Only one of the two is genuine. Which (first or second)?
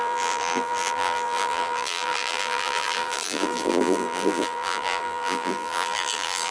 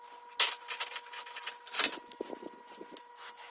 second